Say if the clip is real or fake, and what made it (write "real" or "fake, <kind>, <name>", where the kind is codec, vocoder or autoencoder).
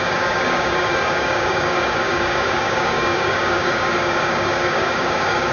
fake, codec, DAC